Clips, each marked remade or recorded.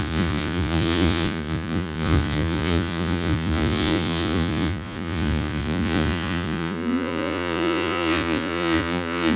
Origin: remade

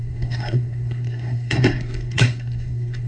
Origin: remade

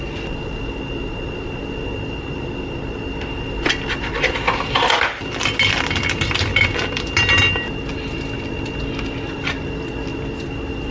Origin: recorded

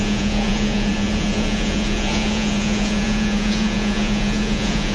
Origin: remade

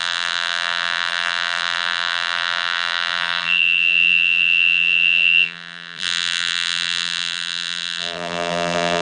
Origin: remade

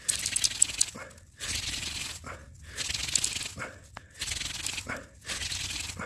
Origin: recorded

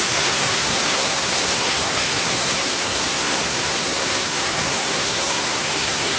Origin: remade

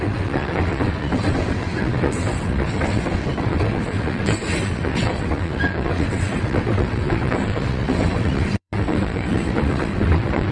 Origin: remade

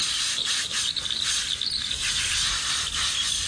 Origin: recorded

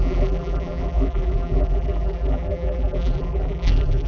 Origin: remade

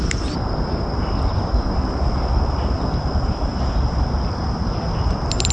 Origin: recorded